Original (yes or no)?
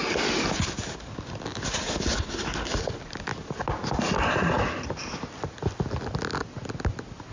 yes